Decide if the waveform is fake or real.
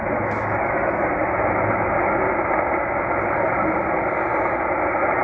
real